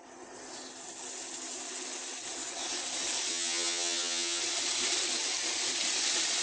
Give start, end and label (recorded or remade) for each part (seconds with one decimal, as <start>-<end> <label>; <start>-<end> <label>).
0.0-3.3 recorded; 3.3-4.4 remade; 4.4-6.4 recorded